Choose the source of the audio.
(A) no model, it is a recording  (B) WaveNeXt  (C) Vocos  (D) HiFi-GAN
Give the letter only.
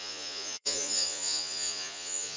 C